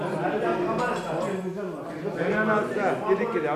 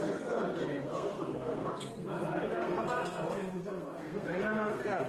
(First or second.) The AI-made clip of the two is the second